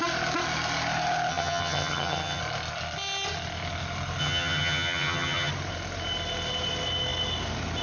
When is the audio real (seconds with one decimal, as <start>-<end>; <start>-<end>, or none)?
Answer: 0.0-1.3; 2.4-4.2; 5.5-7.8